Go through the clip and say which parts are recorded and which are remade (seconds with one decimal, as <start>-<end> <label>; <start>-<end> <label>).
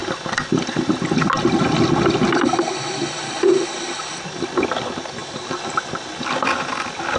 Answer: 0.0-5.2 recorded; 5.2-6.1 remade; 6.1-7.2 recorded